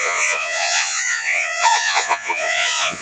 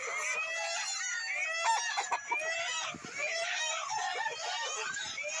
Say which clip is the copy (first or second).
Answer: first